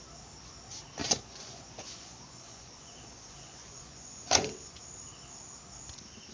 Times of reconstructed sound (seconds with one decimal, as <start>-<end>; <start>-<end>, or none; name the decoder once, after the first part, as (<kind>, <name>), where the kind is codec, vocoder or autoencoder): 1.0-4.8 (vocoder, Vocos)